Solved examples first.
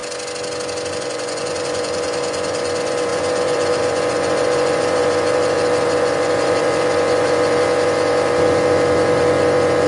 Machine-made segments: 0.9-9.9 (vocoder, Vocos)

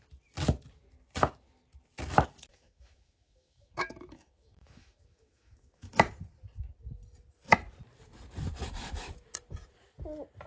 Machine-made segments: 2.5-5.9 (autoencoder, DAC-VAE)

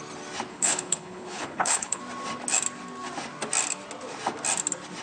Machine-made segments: 0.5-2.0 (codec, HILCodec)